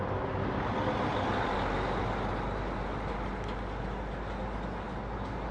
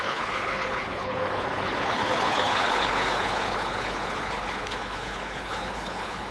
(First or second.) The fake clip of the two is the second